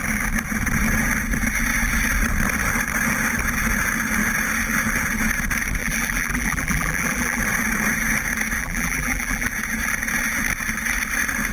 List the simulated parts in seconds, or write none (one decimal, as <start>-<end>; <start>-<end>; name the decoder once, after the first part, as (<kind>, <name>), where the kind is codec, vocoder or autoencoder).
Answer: 5.8-7.4 (vocoder, BigVGAN v2); 8.6-9.5